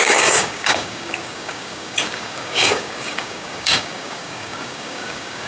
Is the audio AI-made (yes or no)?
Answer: yes